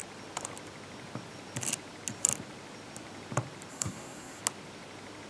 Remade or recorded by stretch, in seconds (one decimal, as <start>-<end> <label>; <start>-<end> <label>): 0.0-3.7 recorded; 3.7-4.4 remade; 4.4-5.3 recorded